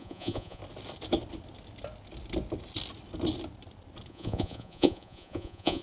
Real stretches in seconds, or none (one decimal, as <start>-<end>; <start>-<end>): 0.6-4.1